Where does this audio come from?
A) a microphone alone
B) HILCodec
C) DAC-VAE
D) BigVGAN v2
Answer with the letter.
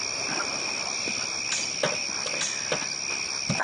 A